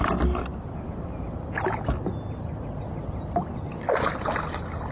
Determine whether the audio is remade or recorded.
recorded